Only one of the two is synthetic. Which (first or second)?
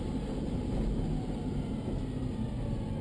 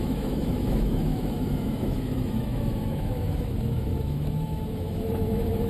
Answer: second